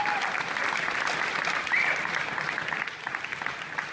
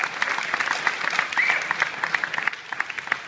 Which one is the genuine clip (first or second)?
second